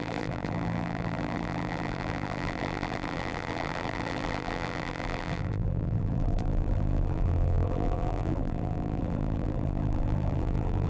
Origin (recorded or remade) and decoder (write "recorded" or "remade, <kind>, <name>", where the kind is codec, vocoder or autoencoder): remade, vocoder, BigVGAN v2